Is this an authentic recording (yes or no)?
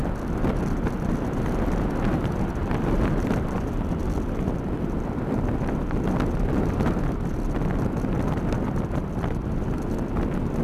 yes